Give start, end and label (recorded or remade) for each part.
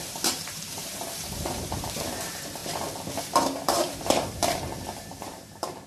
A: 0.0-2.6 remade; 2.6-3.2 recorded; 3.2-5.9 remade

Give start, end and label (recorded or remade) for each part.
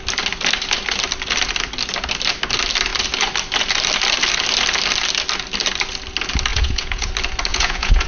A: 0.0-6.5 recorded; 6.5-7.1 remade; 7.1-7.5 recorded; 7.5-8.1 remade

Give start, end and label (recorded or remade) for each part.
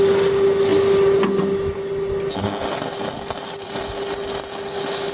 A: 0.0-5.1 recorded